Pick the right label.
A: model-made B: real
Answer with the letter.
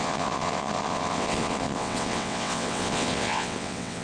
A